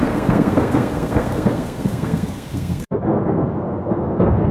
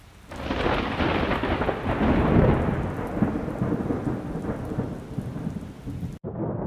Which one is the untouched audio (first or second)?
second